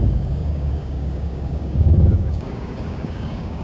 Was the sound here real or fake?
fake